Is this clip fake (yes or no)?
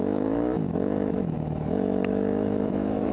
yes